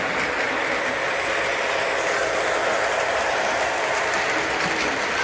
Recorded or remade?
recorded